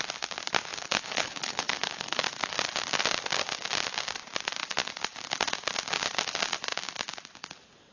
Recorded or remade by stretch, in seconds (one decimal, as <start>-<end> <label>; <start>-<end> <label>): 0.0-0.7 recorded; 0.7-2.2 remade; 2.2-7.9 recorded